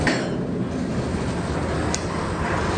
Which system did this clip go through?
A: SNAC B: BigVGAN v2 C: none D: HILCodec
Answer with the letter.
C